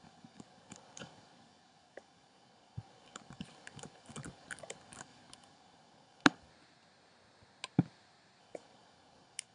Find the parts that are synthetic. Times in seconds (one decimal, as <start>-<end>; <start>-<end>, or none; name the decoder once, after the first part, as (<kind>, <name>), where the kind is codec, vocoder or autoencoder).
0.0-6.5 (codec, DAC); 8.4-9.5